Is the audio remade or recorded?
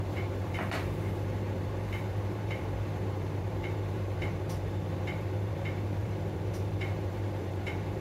remade